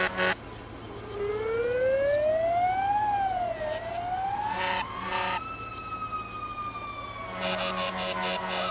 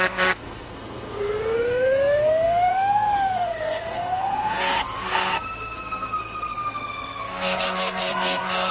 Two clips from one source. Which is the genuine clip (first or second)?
first